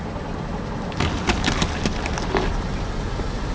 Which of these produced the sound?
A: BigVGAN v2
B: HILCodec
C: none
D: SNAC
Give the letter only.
C